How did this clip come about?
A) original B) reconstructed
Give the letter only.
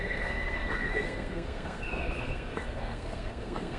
B